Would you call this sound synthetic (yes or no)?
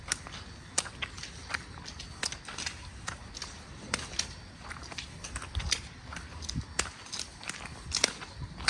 no